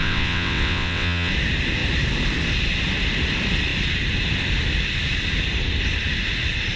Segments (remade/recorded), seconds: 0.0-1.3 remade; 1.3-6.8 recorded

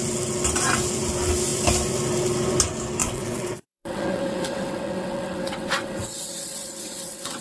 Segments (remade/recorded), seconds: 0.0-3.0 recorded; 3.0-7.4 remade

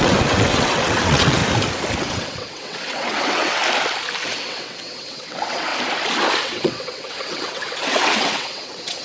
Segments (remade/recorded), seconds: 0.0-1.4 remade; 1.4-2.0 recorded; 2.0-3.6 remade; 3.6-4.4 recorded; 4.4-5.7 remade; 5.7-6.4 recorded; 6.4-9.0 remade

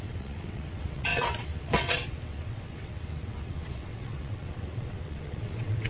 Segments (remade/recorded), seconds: 0.0-5.9 remade

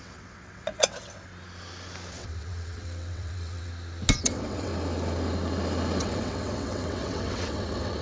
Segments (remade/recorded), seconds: 0.0-1.3 remade; 1.3-2.1 recorded; 2.1-3.7 remade; 3.7-4.2 recorded; 4.2-4.7 remade; 4.7-6.0 recorded; 6.0-8.0 remade

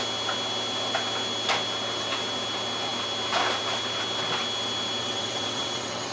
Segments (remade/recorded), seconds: 0.0-5.0 recorded; 5.0-6.1 remade